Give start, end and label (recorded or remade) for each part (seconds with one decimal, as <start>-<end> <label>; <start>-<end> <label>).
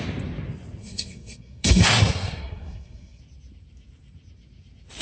0.0-0.8 recorded; 0.8-3.2 remade; 3.2-5.0 recorded